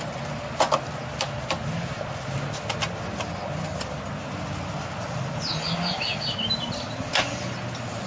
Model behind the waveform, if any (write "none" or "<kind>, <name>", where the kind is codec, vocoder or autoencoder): none